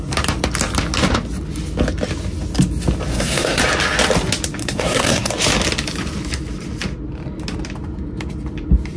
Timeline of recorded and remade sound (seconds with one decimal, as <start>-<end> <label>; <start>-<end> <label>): 0.0-3.1 recorded; 3.1-3.6 remade; 3.6-4.6 recorded; 4.6-5.3 remade; 5.3-9.0 recorded